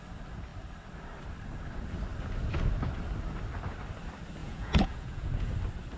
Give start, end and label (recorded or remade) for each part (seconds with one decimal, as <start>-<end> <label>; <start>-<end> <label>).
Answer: 0.0-4.4 recorded; 4.4-5.5 remade; 5.5-6.0 recorded